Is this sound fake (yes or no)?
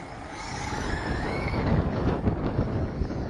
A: yes